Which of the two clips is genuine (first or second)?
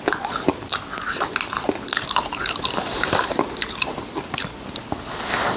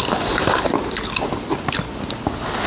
second